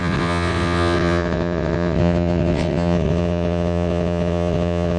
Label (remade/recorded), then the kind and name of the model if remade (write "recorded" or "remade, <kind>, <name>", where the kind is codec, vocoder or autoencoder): remade, vocoder, WaveNeXt